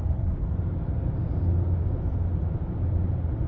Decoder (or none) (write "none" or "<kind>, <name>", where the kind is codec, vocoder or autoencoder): none